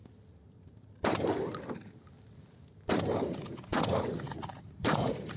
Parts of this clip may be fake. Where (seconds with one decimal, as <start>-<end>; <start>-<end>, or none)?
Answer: 3.2-5.4